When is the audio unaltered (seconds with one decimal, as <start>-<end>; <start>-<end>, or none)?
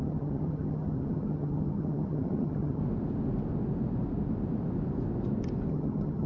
2.8-5.7